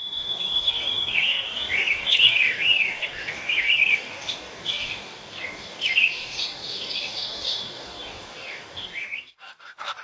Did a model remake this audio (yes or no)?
yes